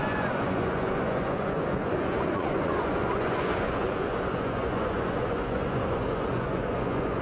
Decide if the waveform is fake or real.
fake